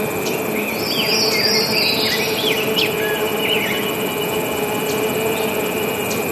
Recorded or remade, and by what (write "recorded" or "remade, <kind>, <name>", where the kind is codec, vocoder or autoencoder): recorded